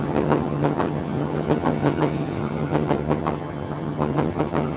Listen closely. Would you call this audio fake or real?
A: fake